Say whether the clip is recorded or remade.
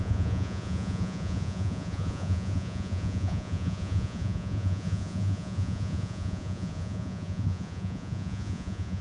remade